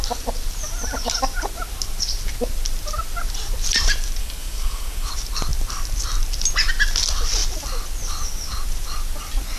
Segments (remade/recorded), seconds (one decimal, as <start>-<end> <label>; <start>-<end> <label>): 0.0-4.2 recorded; 4.2-5.1 remade; 5.1-9.6 recorded